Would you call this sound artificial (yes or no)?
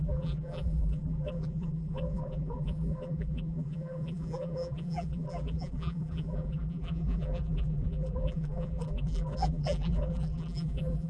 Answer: yes